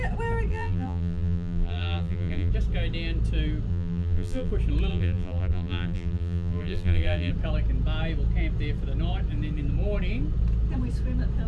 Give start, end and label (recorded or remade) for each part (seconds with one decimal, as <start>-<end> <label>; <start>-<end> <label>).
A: 0.0-0.5 recorded; 0.5-2.5 remade; 2.5-3.7 recorded; 3.7-4.5 remade; 4.5-4.9 recorded; 4.9-7.3 remade; 7.3-11.5 recorded